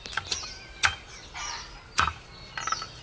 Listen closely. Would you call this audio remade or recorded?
recorded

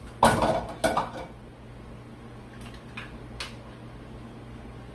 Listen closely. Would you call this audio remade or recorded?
recorded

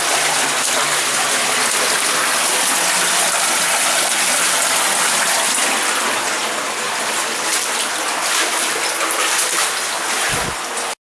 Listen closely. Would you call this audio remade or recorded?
recorded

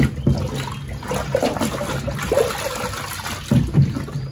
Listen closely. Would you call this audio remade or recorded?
recorded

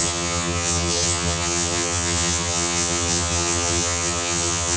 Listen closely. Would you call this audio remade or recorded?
remade